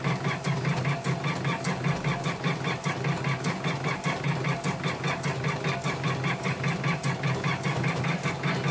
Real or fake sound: real